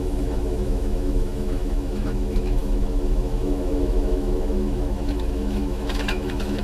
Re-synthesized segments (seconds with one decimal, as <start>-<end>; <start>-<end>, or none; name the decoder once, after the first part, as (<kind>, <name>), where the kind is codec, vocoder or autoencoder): 0.0-6.6 (autoencoder, DAC-VAE)